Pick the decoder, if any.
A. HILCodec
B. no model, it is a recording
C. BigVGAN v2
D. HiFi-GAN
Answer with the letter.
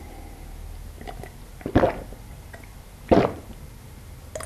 B